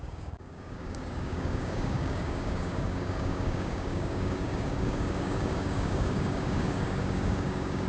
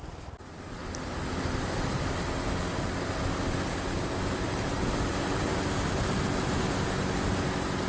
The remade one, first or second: first